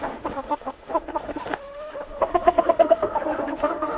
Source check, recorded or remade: remade